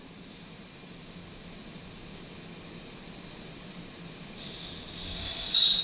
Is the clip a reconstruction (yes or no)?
no